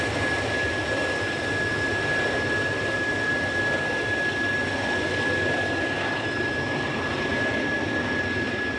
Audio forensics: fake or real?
real